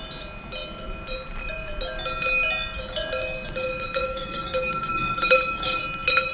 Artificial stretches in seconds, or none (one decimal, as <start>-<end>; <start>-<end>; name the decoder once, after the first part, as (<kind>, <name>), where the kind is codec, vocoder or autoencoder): 4.0-5.8 (codec, DAC)